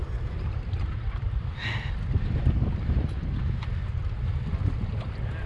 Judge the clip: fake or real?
real